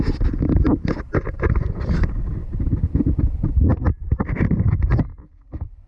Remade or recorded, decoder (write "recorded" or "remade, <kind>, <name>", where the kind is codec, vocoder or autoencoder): remade, vocoder, BigVGAN v2